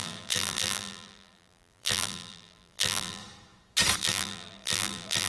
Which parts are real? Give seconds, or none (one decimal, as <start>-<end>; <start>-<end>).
3.2-4.0